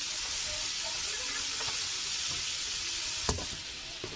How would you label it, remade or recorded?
remade